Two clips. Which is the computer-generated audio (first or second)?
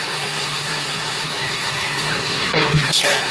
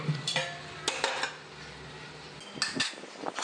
first